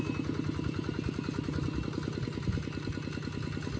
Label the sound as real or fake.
real